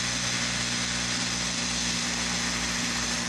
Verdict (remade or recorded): recorded